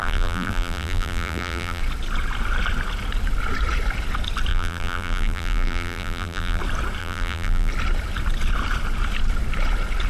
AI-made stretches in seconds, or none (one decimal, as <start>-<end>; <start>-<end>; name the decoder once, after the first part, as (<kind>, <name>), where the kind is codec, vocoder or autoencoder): 0.0-1.8 (vocoder, BigVGAN v2); 4.5-6.6; 7.0-7.7